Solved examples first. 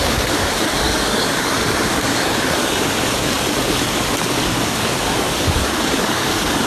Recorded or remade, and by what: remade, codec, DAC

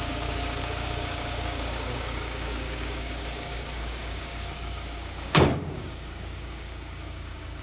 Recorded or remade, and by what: remade, codec, DAC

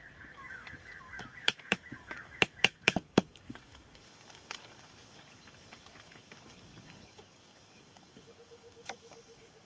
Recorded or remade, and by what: remade, codec, DAC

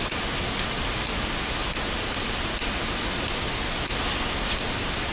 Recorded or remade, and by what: recorded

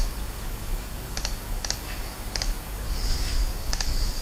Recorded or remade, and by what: remade, codec, DAC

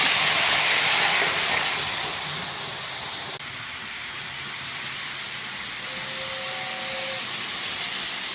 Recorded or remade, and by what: recorded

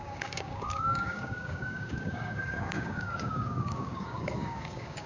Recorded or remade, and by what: remade, codec, DAC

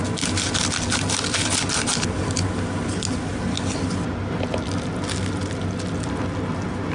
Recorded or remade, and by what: recorded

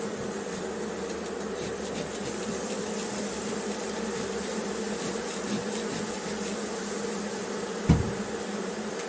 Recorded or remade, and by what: recorded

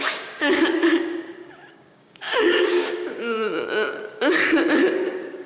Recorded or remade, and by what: remade, codec, DAC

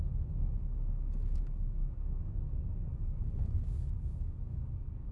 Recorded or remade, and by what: remade, codec, DAC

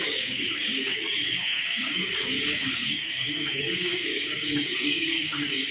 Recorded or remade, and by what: remade, codec, DAC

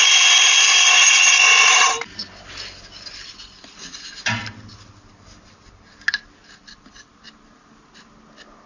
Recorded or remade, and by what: recorded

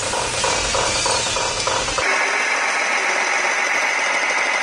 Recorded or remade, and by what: recorded